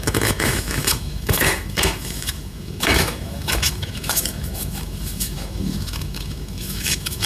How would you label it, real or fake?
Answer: fake